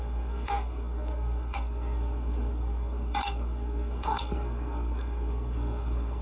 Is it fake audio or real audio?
fake